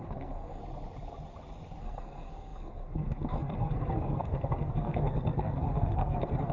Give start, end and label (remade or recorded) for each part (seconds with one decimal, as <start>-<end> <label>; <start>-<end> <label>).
0.0-0.6 remade; 0.6-1.8 recorded; 1.8-6.5 remade